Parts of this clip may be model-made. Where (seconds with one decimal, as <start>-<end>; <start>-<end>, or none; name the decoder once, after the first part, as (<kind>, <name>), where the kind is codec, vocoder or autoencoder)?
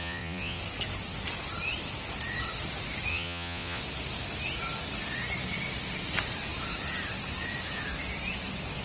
0.0-0.6 (vocoder, Vocos); 3.1-3.8